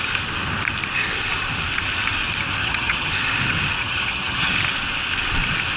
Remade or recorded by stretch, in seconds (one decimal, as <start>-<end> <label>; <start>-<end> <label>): 0.0-2.6 recorded; 2.6-3.1 remade; 3.1-3.8 recorded; 3.8-4.5 remade; 4.5-5.8 recorded